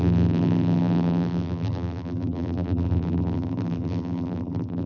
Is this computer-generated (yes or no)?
yes